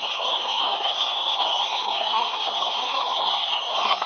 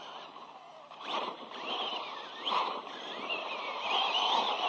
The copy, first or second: first